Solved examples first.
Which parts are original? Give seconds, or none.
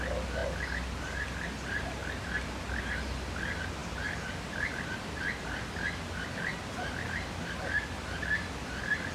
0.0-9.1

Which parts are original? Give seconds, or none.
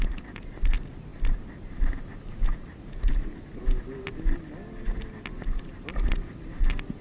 0.0-7.0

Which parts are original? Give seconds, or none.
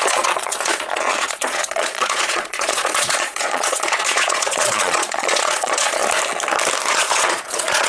6.0-6.9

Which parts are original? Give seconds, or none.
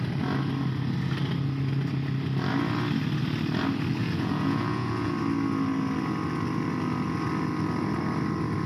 0.0-4.0; 5.1-8.7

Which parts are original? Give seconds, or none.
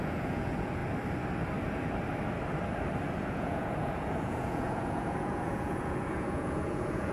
0.8-3.2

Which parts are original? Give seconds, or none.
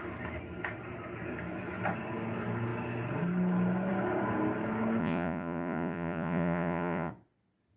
0.0-5.0; 7.1-7.8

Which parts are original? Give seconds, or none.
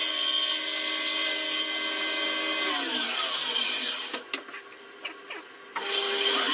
0.0-6.5